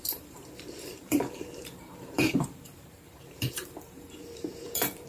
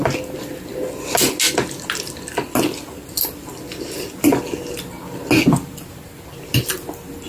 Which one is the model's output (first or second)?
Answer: first